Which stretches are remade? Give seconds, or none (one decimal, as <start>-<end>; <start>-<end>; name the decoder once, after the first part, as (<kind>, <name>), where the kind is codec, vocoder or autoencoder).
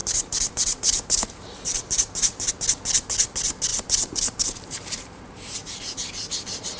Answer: 0.0-2.5 (vocoder, BigVGAN v2); 3.7-5.8